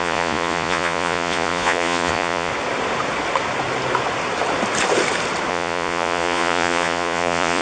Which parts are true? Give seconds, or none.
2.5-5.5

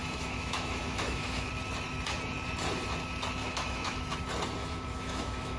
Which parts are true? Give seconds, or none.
1.5-3.4; 4.0-4.6